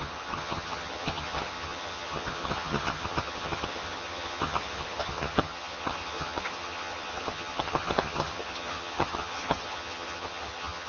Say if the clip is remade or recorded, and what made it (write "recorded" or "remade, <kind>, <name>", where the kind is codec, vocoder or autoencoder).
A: remade, vocoder, HiFi-GAN